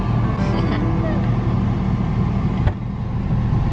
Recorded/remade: recorded